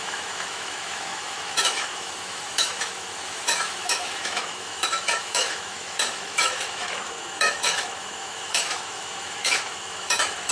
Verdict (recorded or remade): remade